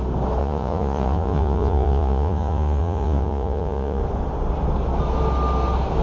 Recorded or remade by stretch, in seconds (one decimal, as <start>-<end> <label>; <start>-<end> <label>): 0.0-0.4 recorded; 0.4-4.0 remade; 4.0-6.0 recorded